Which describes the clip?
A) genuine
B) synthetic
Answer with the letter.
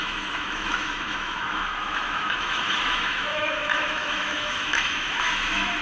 B